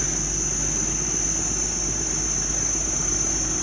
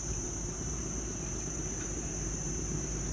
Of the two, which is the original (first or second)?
first